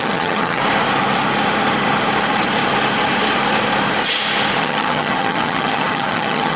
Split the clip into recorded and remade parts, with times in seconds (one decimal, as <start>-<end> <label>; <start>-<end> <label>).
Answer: 0.0-0.6 remade; 0.6-4.6 recorded; 4.6-6.6 remade